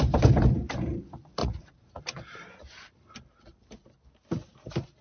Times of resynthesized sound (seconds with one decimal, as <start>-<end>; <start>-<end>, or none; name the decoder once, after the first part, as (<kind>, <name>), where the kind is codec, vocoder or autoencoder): 1.4-2.0 (vocoder, Vocos)